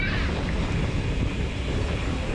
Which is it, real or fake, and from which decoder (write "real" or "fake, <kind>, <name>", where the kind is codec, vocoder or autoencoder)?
real